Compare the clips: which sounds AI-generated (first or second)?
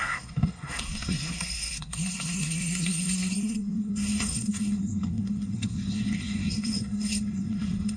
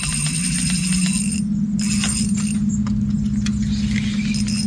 first